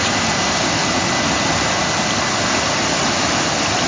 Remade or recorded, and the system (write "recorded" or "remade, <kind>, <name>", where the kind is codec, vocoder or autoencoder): recorded